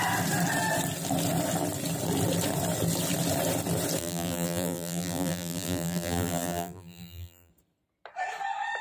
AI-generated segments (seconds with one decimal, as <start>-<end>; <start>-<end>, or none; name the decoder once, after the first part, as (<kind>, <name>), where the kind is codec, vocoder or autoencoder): 4.0-7.5 (vocoder, BigVGAN v2)